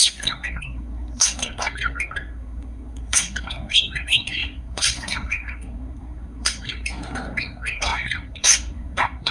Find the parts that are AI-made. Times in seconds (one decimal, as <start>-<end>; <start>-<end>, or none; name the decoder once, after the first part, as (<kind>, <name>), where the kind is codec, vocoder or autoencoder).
0.0-9.3 (codec, SNAC)